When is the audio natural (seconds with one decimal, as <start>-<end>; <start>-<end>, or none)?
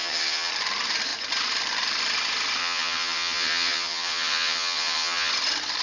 0.5-2.6; 5.3-5.8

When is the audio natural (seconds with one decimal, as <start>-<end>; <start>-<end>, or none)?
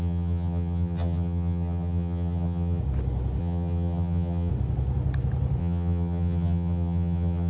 2.8-3.4; 4.5-5.6